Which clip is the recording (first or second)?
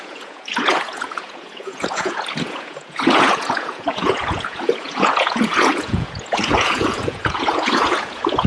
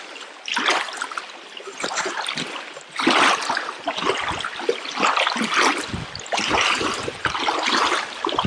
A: second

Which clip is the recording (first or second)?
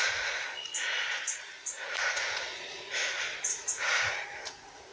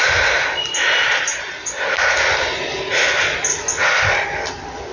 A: second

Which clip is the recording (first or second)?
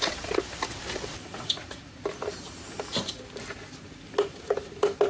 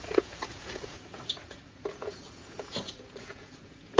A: first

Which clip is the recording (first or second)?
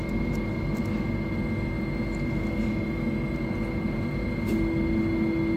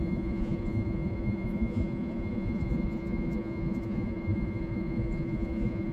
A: first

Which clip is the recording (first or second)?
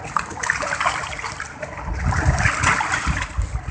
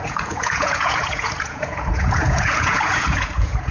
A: first